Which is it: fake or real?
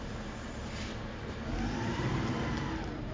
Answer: real